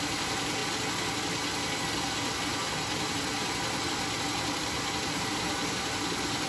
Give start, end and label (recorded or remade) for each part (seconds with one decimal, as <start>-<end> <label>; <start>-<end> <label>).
0.0-2.5 recorded; 2.5-6.5 remade